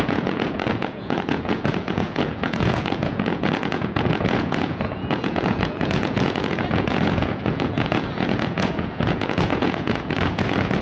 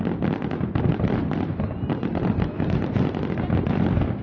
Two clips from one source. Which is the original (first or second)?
second